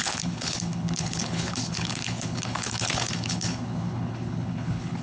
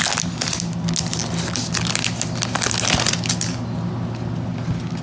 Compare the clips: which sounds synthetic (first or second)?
first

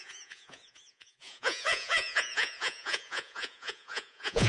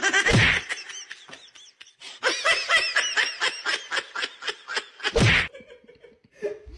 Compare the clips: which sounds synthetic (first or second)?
first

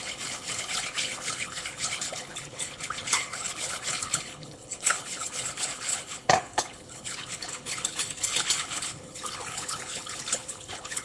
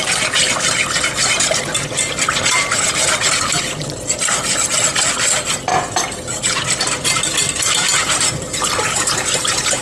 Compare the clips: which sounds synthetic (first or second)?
first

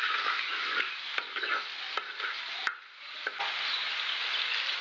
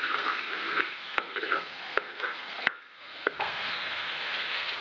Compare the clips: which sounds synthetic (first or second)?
second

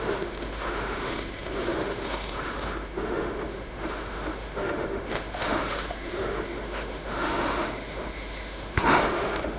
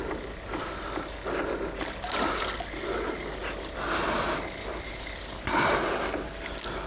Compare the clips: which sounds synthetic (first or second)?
first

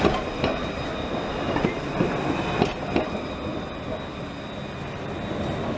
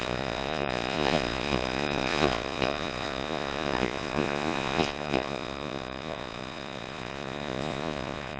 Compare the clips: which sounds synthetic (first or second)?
second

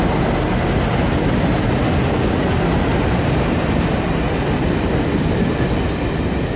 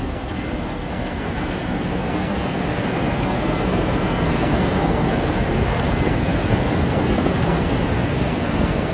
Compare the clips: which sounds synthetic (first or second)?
second